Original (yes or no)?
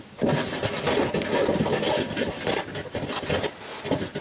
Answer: yes